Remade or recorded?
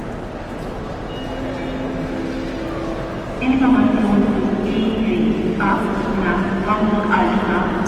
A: recorded